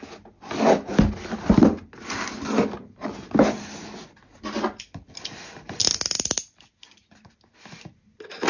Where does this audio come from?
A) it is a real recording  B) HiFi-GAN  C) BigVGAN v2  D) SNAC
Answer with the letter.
A